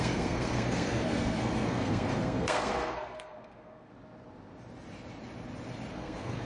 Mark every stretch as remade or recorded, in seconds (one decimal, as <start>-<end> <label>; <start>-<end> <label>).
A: 0.0-3.9 remade; 3.9-5.9 recorded; 5.9-6.4 remade